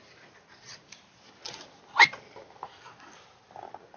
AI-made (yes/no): no